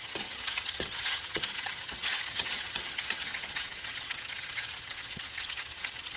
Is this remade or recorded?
remade